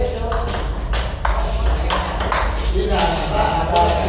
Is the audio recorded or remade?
recorded